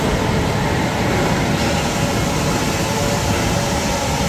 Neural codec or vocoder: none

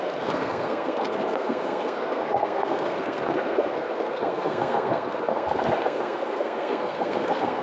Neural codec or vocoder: codec, SNAC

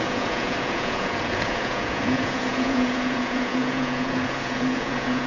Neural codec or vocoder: vocoder, Vocos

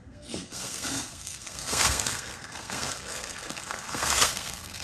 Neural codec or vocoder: codec, SNAC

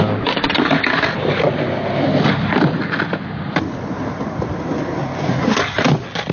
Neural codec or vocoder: none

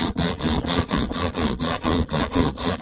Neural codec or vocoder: vocoder, Vocos